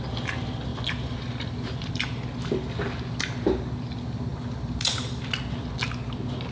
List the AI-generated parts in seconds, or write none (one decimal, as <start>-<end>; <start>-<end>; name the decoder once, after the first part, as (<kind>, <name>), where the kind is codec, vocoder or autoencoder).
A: 0.7-2.3 (vocoder, BigVGAN v2); 4.3-5.2